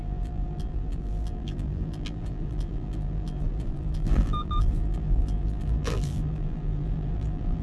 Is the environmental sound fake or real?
fake